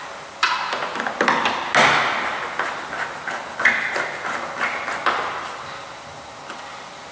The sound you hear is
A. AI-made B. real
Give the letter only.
B